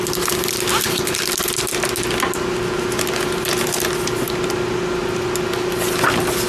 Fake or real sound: real